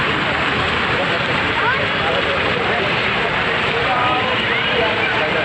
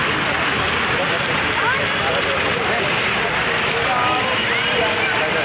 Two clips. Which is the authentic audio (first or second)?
second